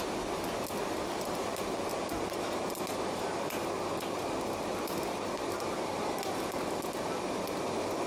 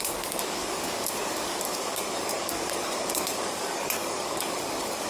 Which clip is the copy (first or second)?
second